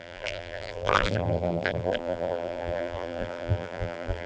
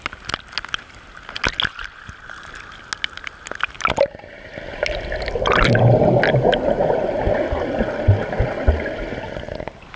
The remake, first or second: first